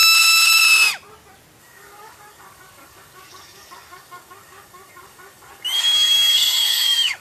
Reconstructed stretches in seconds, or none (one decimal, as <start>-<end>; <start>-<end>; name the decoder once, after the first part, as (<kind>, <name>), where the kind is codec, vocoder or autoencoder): 1.6-7.2 (codec, DAC)